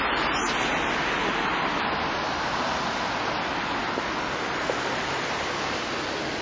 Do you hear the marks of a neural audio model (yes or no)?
no